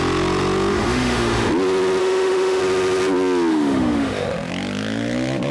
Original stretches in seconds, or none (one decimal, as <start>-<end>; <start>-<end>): 0.0-0.7; 1.5-2.0; 2.6-3.5; 4.5-5.5